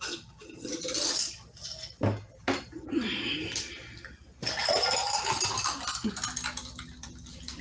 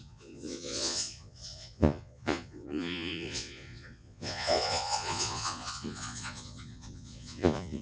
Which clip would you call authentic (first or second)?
first